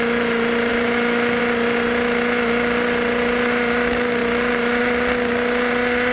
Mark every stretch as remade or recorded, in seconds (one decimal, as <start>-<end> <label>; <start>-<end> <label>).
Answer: 0.0-0.7 recorded; 0.7-1.4 remade; 1.4-6.1 recorded